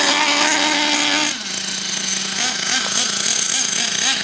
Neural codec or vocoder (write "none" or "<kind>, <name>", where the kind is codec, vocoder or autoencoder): none